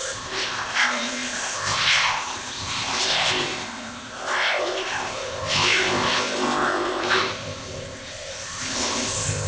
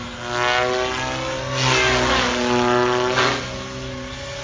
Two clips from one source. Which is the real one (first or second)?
second